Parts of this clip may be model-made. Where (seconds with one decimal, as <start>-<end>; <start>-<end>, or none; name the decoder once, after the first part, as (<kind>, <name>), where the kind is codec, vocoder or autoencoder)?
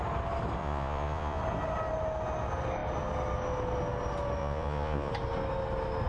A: 0.6-1.4 (vocoder, Vocos); 4.4-5.1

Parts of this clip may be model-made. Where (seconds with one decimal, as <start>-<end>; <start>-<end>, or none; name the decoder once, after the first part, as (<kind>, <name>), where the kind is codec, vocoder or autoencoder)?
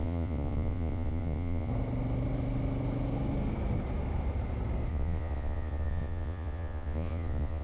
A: 0.0-1.7 (vocoder, Vocos); 4.9-7.6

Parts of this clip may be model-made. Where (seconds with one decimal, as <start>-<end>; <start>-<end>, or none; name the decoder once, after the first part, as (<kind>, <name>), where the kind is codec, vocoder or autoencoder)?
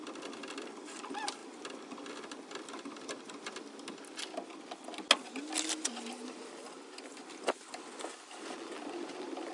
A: none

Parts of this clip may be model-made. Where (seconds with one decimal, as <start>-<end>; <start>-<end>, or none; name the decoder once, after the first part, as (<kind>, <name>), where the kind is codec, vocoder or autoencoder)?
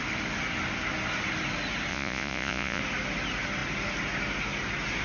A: 1.9-2.8 (vocoder, Vocos)